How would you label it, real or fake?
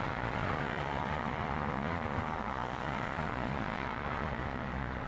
fake